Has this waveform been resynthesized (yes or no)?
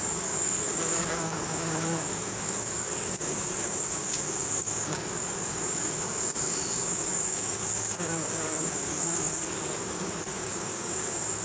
yes